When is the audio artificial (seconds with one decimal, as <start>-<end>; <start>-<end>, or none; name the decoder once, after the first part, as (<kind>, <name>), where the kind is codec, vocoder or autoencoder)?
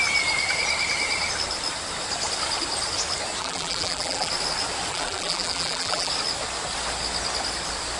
3.4-4.3 (vocoder, BigVGAN v2); 4.9-6.1